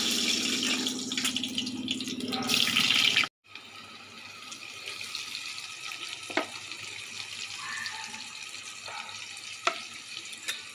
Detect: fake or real real